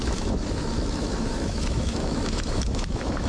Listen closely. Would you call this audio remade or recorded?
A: remade